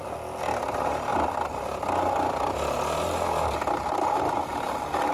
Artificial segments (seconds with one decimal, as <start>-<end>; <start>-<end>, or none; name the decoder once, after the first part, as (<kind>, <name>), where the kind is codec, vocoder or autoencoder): none